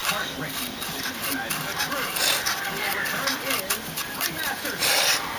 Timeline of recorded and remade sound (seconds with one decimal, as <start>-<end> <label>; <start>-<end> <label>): 0.0-5.4 remade